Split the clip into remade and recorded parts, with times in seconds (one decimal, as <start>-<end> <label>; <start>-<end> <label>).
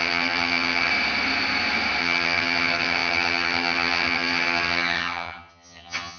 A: 0.0-0.9 remade; 0.9-2.0 recorded; 2.0-6.2 remade